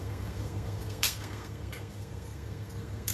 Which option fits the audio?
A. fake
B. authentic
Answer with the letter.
A